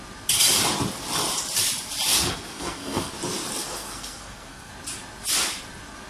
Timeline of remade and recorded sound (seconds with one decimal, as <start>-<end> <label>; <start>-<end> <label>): 0.0-2.2 recorded; 2.2-3.1 remade; 3.1-3.6 recorded; 3.6-4.7 remade; 4.7-6.1 recorded